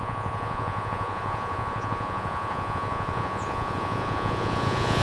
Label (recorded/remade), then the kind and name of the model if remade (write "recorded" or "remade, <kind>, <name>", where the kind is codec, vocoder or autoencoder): remade, vocoder, Vocos